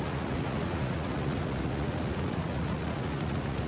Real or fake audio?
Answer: fake